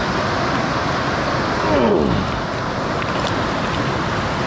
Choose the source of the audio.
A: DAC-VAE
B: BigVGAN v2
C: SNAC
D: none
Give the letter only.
D